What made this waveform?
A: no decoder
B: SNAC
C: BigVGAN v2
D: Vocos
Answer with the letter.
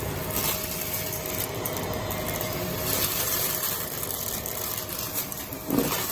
A